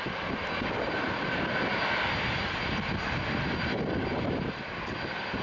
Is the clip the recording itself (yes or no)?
yes